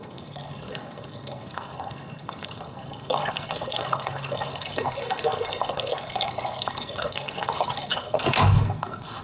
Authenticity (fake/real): fake